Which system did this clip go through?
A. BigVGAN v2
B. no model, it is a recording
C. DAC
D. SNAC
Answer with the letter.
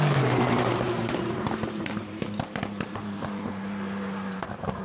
A